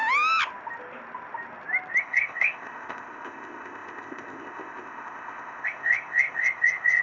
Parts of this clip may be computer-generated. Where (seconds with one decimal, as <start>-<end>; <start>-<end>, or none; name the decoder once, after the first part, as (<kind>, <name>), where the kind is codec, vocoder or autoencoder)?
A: 2.0-7.0 (codec, ZipCodec)